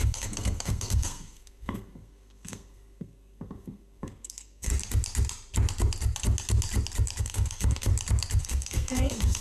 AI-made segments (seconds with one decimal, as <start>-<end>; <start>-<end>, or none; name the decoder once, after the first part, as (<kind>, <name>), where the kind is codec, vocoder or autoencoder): 0.0-4.7 (codec, SNAC); 7.2-7.9; 8.4-9.4